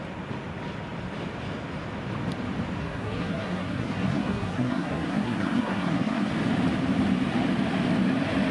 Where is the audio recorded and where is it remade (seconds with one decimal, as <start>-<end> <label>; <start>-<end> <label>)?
0.0-2.8 recorded; 2.8-6.3 remade; 6.3-8.5 recorded